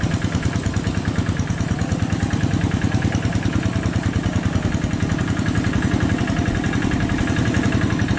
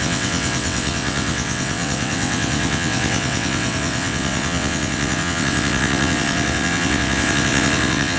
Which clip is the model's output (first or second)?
second